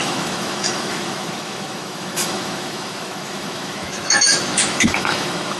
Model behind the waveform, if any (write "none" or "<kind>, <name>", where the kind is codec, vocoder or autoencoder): autoencoder, DAC-VAE